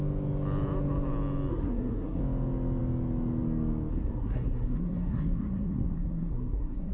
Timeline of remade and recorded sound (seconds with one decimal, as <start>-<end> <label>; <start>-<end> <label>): 0.0-1.5 recorded; 1.5-2.2 remade; 2.2-3.9 recorded; 3.9-6.9 remade